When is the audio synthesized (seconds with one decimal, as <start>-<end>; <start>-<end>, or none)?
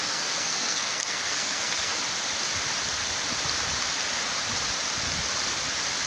0.0-2.0